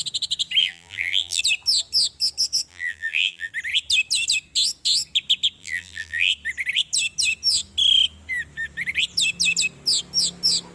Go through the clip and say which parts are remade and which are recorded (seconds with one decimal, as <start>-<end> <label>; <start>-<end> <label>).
0.0-0.6 recorded; 0.6-1.4 remade; 1.4-2.7 recorded; 2.7-3.5 remade; 3.5-5.6 recorded; 5.6-6.3 remade; 6.3-10.7 recorded